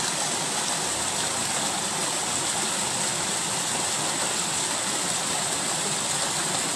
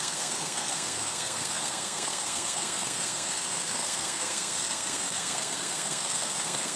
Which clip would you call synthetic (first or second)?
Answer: second